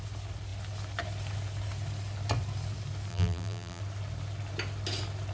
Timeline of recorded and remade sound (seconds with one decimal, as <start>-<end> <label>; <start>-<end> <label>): 0.0-3.1 recorded; 3.1-3.8 remade; 3.8-5.3 recorded